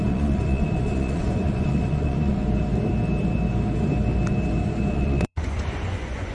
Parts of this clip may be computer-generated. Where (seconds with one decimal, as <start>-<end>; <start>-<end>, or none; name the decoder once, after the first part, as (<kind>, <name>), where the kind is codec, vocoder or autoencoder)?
0.0-2.4 (vocoder, Vocos); 4.9-6.3